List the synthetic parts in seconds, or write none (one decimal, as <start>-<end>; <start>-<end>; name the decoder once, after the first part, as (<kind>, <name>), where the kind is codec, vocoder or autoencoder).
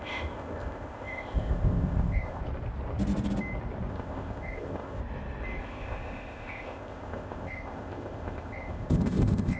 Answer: 0.0-2.4 (codec, ZipCodec); 3.9-5.0; 5.6-9.6